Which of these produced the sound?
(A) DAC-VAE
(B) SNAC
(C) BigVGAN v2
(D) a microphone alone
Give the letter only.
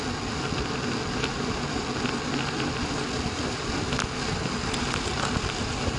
D